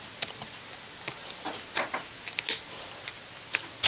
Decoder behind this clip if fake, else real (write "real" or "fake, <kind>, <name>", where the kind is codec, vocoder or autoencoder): real